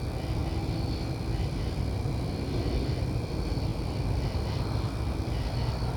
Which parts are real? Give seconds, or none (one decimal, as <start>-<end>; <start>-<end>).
0.0-6.0